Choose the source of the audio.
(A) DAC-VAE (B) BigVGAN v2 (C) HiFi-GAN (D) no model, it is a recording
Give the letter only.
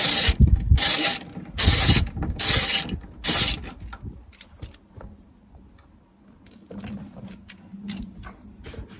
D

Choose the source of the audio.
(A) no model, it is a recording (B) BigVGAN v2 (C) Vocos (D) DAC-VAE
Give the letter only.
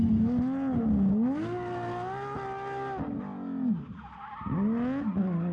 A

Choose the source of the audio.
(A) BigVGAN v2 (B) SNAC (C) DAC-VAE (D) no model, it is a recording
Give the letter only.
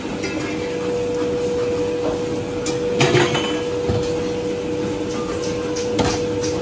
D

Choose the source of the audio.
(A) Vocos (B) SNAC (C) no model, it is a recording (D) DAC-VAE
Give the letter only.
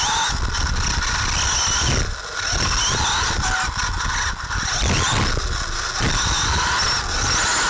C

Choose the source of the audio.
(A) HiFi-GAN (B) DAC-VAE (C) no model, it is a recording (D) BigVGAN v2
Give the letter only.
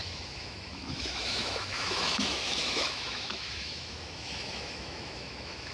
B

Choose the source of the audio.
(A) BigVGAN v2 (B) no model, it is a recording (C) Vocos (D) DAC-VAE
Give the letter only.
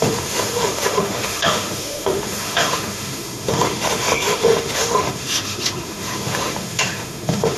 D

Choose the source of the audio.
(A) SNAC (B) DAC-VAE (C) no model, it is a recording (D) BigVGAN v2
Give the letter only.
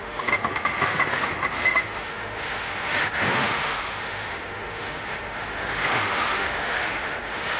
B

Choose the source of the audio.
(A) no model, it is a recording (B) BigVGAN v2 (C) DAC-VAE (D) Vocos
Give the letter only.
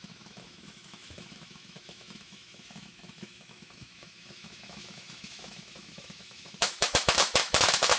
C